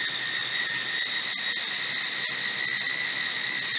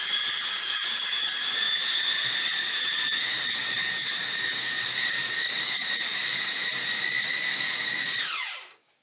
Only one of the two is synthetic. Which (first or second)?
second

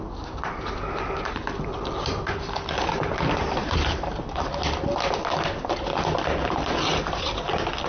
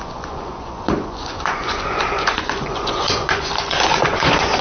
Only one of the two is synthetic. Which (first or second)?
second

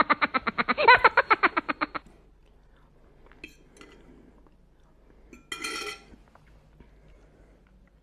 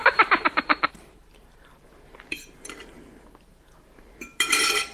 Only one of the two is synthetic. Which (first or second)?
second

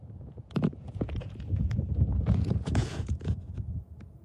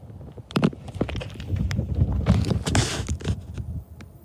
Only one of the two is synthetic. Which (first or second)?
first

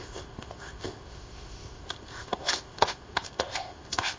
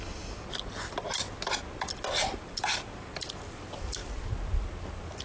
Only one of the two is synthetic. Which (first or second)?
first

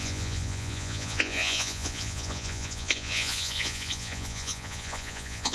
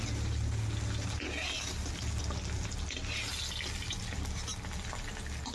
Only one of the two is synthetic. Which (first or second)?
first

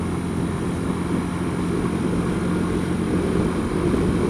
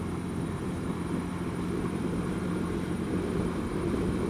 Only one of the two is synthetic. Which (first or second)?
second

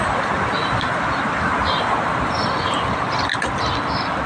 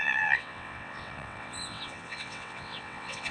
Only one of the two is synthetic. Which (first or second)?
second